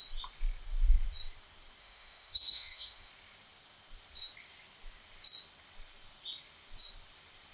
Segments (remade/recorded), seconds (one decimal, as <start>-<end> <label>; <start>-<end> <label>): 0.0-1.8 recorded; 1.8-3.1 remade; 3.1-7.5 recorded